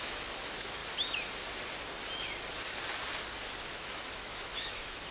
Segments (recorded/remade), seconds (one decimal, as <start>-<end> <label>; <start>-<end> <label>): 0.0-0.8 remade; 0.8-3.6 recorded; 3.6-5.1 remade